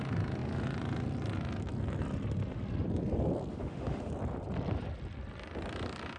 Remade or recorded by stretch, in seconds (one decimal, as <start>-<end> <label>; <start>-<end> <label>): 0.0-3.5 recorded; 3.5-4.1 remade; 4.1-6.2 recorded